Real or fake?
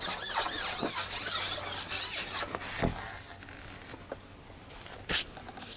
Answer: real